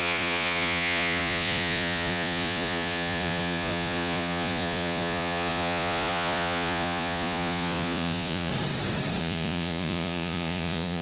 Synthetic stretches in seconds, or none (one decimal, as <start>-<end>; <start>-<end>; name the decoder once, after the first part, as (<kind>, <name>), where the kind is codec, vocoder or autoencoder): 0.0-8.5 (vocoder, Vocos); 9.2-11.0